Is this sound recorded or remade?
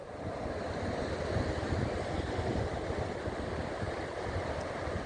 recorded